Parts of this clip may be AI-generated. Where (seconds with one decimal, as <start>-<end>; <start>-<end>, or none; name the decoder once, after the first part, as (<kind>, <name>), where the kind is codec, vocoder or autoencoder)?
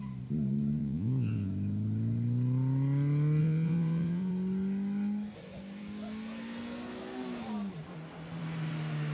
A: 0.8-1.5 (vocoder, Vocos); 3.4-4.3